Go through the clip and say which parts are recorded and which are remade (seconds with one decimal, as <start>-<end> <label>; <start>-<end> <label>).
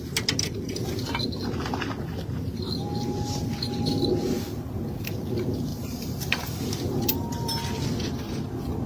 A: 0.0-5.7 recorded; 5.7-6.8 remade; 6.8-8.9 recorded